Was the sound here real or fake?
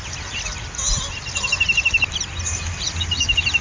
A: real